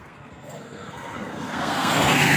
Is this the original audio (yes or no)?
no